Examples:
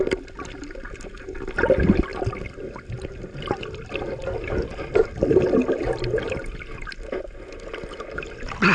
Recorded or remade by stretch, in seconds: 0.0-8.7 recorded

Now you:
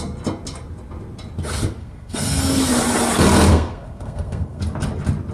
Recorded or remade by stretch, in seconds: 0.0-1.8 recorded; 1.8-2.4 remade; 2.4-3.5 recorded; 3.5-4.6 remade; 4.6-5.3 recorded

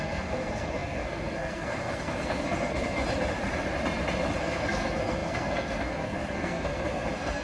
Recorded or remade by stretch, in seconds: 0.0-3.0 remade; 3.0-4.4 recorded; 4.4-7.4 remade